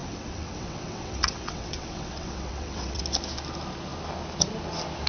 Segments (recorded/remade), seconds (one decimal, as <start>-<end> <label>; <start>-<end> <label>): 0.0-3.0 remade; 3.0-5.1 recorded